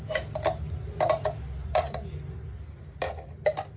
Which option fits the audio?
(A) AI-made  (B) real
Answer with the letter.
B